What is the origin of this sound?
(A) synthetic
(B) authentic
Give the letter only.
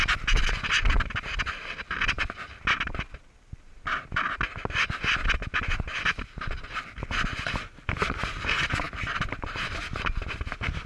B